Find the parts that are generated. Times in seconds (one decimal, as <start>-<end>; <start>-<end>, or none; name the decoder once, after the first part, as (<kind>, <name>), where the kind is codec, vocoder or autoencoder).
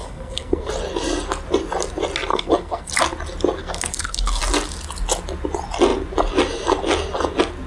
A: 0.0-0.7 (codec, SNAC); 2.3-2.9; 3.6-4.4